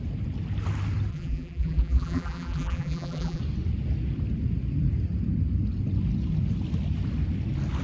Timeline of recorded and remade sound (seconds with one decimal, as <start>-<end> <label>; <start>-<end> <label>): 0.0-1.1 recorded; 1.1-3.4 remade; 3.4-7.8 recorded

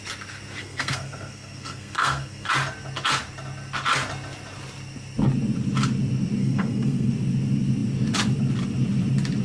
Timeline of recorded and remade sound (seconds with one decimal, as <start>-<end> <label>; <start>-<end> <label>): 0.0-0.6 recorded; 0.6-2.5 remade; 2.5-6.4 recorded; 6.4-7.1 remade; 7.1-9.4 recorded

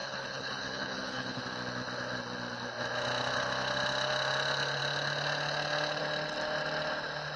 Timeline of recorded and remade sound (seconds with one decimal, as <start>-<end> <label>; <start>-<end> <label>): 0.0-1.4 remade; 1.4-7.4 recorded

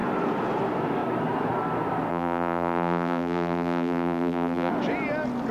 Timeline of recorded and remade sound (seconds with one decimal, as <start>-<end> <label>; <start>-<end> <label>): 0.0-2.1 recorded; 2.1-4.7 remade; 4.7-5.5 recorded